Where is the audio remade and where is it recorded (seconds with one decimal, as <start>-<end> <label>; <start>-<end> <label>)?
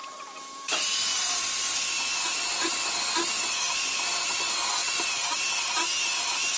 0.0-1.1 remade; 1.1-3.5 recorded; 3.5-4.8 remade; 4.8-6.0 recorded; 6.0-6.6 remade